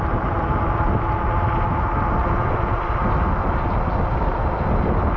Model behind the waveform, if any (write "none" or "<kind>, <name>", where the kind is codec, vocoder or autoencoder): none